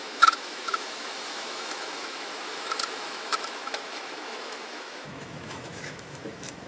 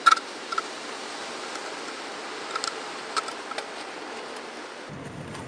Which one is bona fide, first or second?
second